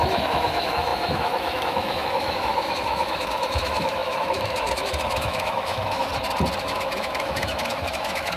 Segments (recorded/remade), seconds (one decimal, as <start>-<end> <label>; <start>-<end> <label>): 0.0-6.1 remade; 6.1-6.6 recorded; 6.6-8.4 remade